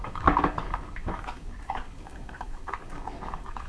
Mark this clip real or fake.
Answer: fake